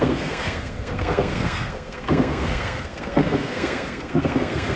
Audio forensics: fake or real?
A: fake